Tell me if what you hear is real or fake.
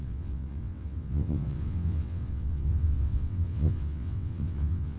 fake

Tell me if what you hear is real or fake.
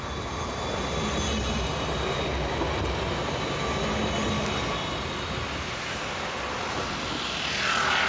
real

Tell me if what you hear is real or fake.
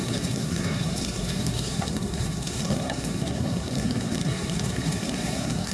fake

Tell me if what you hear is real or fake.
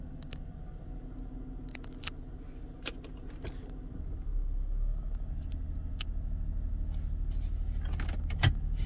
real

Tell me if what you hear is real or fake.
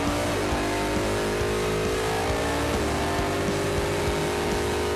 real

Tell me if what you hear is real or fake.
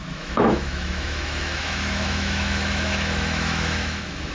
fake